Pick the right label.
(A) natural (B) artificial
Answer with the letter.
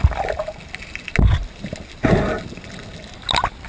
A